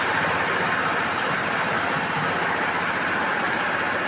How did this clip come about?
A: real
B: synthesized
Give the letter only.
A